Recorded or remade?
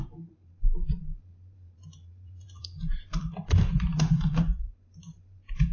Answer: remade